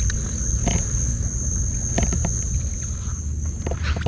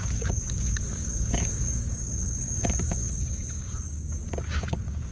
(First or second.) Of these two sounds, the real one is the first